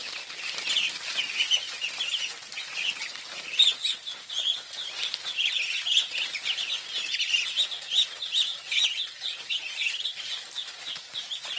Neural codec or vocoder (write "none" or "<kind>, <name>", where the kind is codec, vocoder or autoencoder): none